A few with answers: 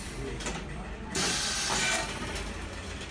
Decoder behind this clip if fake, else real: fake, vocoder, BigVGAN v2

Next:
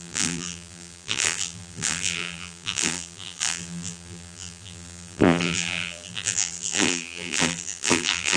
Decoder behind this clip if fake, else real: fake, vocoder, BigVGAN v2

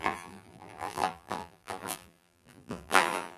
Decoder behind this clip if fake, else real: fake, vocoder, BigVGAN v2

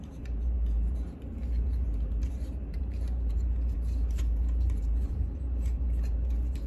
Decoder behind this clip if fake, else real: fake, vocoder, BigVGAN v2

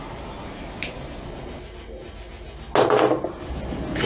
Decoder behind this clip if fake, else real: real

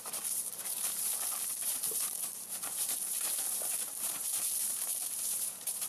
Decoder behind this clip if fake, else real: fake, vocoder, BigVGAN v2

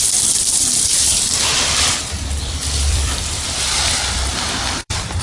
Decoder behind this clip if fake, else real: fake, vocoder, BigVGAN v2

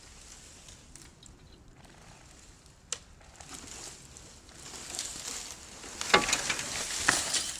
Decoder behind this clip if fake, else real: real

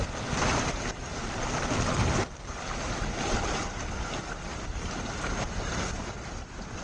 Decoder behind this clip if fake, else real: real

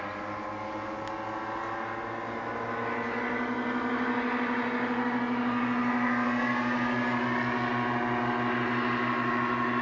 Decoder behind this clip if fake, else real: real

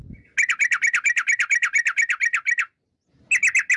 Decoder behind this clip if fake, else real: real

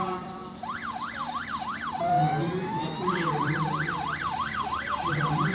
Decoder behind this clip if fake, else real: fake, vocoder, BigVGAN v2